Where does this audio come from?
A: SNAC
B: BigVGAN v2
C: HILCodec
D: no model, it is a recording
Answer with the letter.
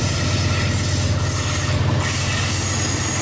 D